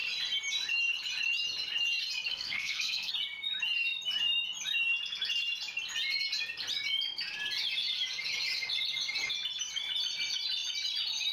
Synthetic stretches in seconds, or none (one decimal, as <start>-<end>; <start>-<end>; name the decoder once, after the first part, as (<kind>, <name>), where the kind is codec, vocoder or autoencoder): 2.3-3.1 (codec, SNAC)